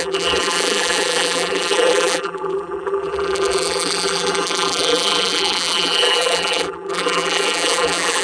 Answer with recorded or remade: remade